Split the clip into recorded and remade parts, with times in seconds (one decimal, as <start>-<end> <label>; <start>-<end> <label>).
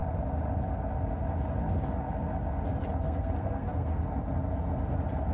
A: 0.0-3.0 recorded; 3.0-4.0 remade; 4.0-5.3 recorded